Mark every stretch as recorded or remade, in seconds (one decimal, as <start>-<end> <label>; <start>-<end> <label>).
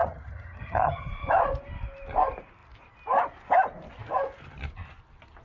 0.0-1.1 remade; 1.1-5.4 recorded